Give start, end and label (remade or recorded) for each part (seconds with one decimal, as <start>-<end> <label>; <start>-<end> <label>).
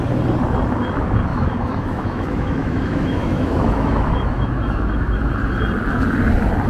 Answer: 0.0-1.3 recorded; 1.3-5.3 remade; 5.3-6.7 recorded